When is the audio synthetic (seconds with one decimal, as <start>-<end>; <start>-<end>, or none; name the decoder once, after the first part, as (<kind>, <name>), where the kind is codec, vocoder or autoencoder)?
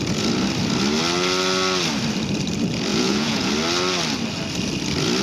2.9-3.5 (vocoder, Vocos)